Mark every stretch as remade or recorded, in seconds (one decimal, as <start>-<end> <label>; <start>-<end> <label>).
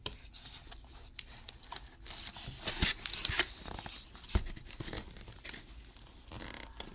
0.0-6.9 recorded